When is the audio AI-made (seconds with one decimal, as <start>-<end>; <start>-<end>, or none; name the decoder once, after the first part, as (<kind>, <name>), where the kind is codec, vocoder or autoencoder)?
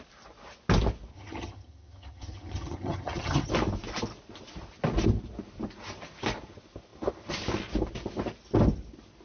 1.1-3.5 (vocoder, HiFi-GAN)